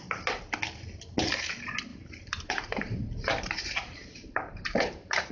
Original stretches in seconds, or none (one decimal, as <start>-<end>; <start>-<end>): 0.0-1.9